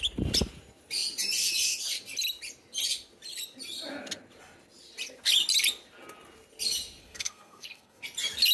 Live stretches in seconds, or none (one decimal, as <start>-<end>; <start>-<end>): 0.0-7.0; 8.0-8.5